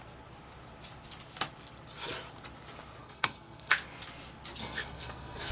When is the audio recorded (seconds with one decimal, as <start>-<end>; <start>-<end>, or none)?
0.0-3.0; 3.7-4.6